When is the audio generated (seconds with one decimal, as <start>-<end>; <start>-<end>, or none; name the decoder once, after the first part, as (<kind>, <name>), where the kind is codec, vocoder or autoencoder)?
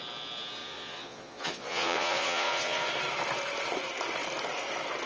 0.6-2.9 (vocoder, Vocos)